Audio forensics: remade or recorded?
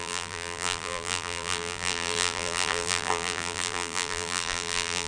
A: remade